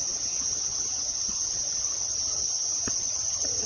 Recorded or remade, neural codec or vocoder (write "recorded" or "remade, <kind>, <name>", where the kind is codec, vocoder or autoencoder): remade, vocoder, HiFi-GAN